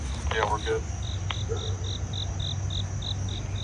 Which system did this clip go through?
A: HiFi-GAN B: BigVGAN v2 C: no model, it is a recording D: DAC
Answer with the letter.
C